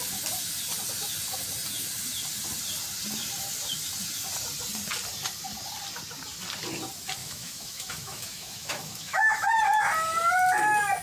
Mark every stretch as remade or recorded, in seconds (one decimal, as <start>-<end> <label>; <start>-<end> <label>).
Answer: 0.0-7.2 recorded; 7.2-9.6 remade; 9.6-11.0 recorded

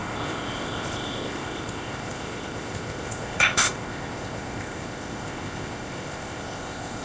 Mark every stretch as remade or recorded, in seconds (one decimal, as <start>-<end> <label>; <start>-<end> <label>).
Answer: 0.0-7.0 remade

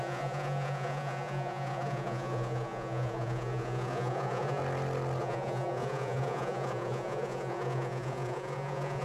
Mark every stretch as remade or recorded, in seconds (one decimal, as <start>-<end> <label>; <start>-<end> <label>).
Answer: 0.0-4.6 remade; 4.6-5.2 recorded; 5.2-9.0 remade

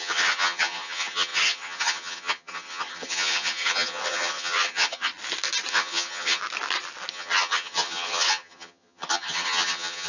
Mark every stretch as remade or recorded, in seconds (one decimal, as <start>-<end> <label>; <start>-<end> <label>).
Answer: 0.0-5.1 remade; 5.1-5.7 recorded; 5.7-6.4 remade; 6.4-7.1 recorded; 7.1-10.1 remade

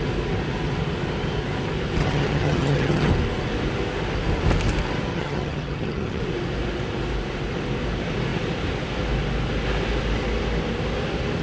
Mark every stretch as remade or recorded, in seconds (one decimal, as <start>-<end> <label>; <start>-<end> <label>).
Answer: 0.0-2.0 recorded; 2.0-3.1 remade; 3.1-5.1 recorded; 5.1-6.2 remade; 6.2-11.4 recorded

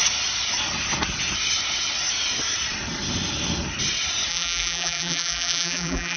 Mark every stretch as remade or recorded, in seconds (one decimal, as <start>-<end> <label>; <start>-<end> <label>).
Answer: 0.0-4.3 recorded; 4.3-6.2 remade

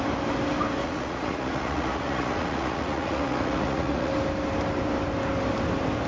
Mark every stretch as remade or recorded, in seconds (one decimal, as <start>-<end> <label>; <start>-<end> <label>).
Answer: 0.0-0.8 recorded; 0.8-4.1 remade; 4.1-6.1 recorded

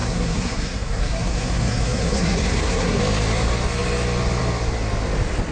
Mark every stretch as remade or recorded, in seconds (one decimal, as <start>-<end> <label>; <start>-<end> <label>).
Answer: 0.0-3.0 remade; 3.0-5.5 recorded